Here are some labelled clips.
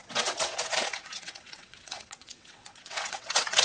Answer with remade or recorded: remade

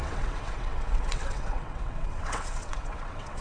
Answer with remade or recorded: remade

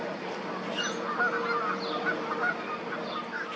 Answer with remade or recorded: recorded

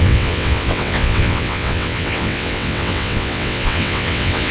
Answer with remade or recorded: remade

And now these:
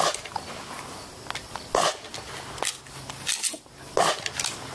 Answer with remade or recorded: recorded